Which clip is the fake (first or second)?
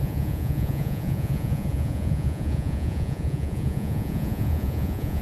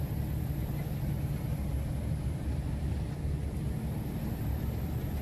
first